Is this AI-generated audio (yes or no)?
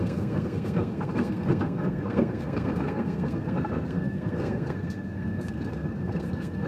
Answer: yes